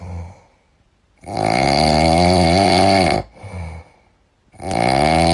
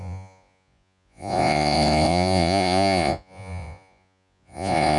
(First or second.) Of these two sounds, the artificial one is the second